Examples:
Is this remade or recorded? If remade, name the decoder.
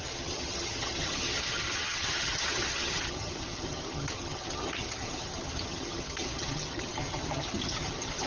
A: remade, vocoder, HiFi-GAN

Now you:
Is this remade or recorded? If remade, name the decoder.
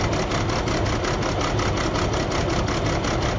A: recorded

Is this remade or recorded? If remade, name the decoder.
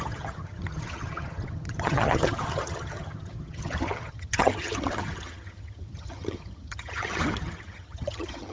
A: remade, vocoder, HiFi-GAN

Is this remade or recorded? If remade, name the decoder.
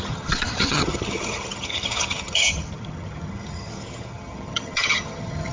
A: remade, vocoder, HiFi-GAN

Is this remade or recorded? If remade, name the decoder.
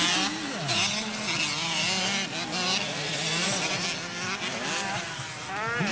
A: recorded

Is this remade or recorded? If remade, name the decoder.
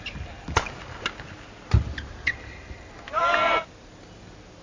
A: recorded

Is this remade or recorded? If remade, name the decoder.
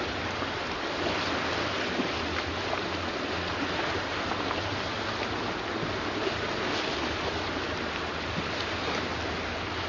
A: recorded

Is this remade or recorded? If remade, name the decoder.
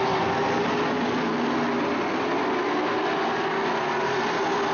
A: recorded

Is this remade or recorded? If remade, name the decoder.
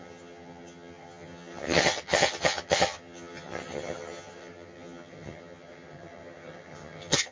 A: remade, vocoder, HiFi-GAN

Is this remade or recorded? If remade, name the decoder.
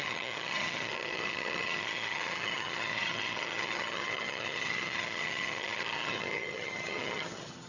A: remade, vocoder, HiFi-GAN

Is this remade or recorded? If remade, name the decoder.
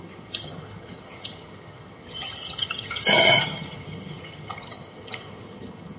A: remade, vocoder, HiFi-GAN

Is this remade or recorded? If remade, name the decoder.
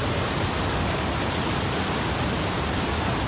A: recorded